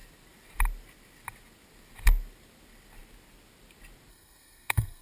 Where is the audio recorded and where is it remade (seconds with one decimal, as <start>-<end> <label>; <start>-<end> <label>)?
0.0-4.1 recorded; 4.1-5.0 remade